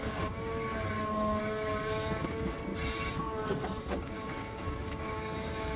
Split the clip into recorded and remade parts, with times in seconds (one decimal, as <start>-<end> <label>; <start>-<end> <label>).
0.0-0.4 remade; 0.4-1.4 recorded; 1.4-2.7 remade; 2.7-3.8 recorded; 3.8-5.8 remade